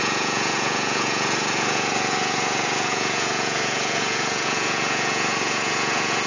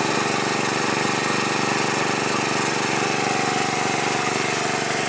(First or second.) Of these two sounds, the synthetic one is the first